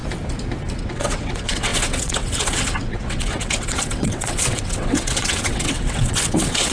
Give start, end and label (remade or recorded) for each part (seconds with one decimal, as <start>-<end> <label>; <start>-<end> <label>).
0.0-0.8 recorded; 0.8-6.7 remade